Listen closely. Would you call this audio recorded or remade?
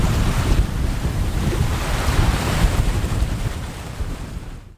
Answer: remade